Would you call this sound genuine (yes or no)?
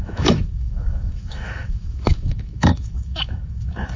no